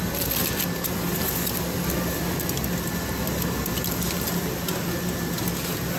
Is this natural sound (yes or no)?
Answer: yes